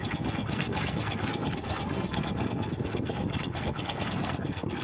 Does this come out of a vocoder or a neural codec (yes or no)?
yes